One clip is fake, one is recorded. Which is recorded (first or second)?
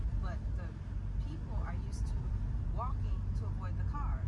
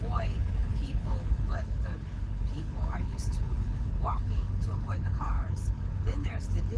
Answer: first